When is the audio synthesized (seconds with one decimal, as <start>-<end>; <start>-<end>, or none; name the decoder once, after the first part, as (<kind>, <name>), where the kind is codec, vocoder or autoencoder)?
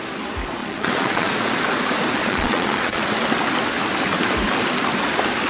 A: 0.6-1.3 (vocoder, Vocos); 2.2-3.0